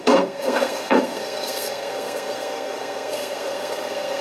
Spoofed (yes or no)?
yes